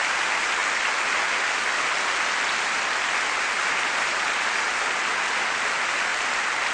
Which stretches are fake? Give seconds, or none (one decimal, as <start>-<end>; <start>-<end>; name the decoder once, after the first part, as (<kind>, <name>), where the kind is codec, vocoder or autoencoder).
none